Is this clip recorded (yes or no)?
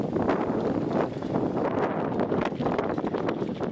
yes